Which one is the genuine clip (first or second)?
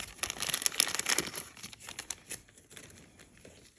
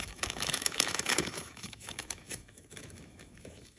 first